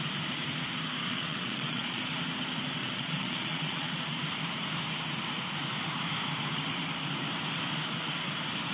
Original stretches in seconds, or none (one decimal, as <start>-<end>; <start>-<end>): 0.0-1.1; 2.0-2.8; 3.9-8.7